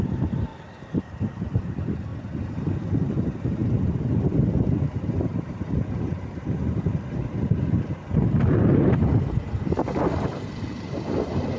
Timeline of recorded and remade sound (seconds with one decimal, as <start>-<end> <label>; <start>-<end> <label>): 0.0-0.5 remade; 0.5-1.4 recorded; 1.4-2.1 remade; 2.1-2.9 recorded; 2.9-7.3 remade; 7.3-8.8 recorded; 8.8-11.6 remade